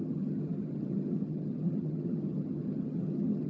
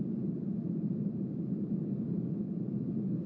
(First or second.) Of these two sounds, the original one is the second